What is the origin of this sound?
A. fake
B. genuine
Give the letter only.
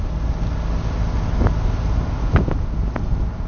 B